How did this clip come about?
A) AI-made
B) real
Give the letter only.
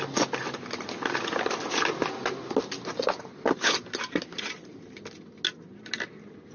B